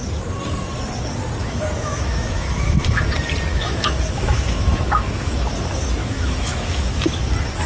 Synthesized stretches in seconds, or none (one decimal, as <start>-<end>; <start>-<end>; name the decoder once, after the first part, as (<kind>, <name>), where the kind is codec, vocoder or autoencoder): 1.4-3.0 (autoencoder, DAC-VAE); 3.5-5.5; 6.0-7.2